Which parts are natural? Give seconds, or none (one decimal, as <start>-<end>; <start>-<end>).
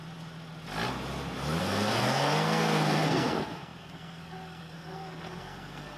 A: 0.0-1.6